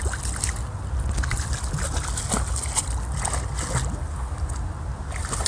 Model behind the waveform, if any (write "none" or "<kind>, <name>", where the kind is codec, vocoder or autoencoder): none